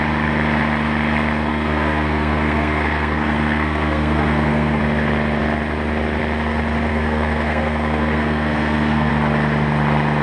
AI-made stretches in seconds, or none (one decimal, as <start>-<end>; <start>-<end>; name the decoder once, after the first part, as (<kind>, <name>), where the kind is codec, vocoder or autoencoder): 1.5-4.8 (codec, SNAC); 6.9-9.1